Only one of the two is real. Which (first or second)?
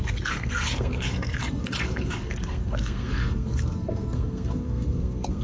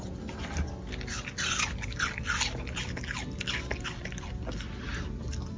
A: second